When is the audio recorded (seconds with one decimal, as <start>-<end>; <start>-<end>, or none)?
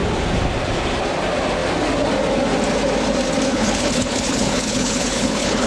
0.0-3.5